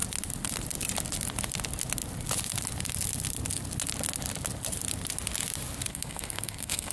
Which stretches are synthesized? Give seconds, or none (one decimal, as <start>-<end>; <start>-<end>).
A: 5.9-6.9